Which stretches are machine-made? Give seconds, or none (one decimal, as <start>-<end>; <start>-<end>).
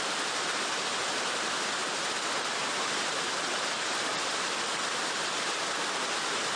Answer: none